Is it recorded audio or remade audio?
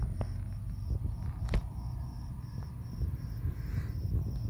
recorded